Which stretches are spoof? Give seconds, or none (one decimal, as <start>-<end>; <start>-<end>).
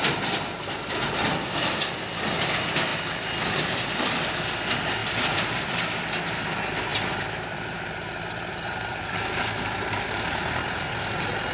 5.0-5.7; 6.9-10.9